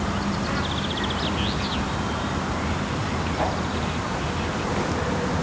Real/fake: real